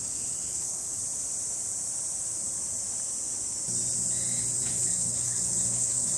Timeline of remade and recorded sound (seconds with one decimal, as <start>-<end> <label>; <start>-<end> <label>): 0.0-1.0 remade; 1.0-4.7 recorded; 4.7-6.2 remade